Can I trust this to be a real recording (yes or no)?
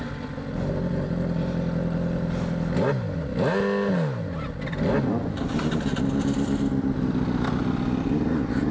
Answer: yes